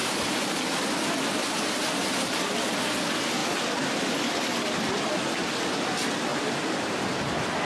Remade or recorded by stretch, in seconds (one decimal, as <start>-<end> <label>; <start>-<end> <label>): 0.0-0.6 remade; 0.6-1.4 recorded; 1.4-2.5 remade; 2.5-6.3 recorded; 6.3-7.6 remade